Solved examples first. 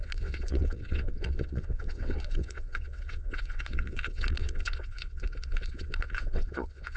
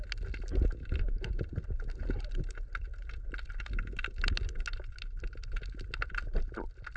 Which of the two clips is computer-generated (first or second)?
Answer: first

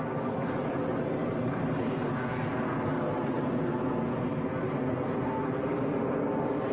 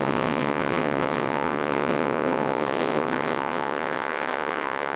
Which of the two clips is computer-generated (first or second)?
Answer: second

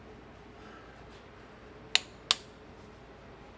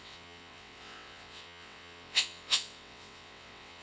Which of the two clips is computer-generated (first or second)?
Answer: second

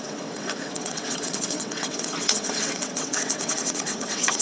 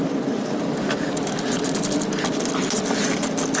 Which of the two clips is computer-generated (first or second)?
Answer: first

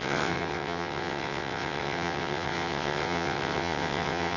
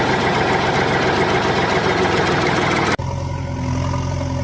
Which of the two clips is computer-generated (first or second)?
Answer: first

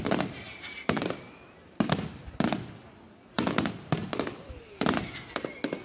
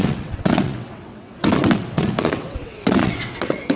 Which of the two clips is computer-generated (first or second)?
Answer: second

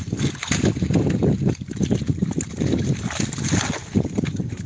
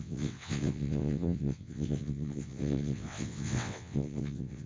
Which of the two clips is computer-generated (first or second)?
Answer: second